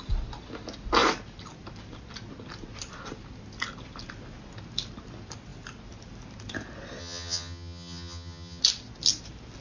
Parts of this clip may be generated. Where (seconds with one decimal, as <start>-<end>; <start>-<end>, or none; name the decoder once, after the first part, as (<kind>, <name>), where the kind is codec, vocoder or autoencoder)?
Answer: 7.0-8.6 (vocoder, HiFi-GAN)